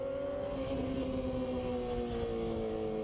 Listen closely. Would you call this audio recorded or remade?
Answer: recorded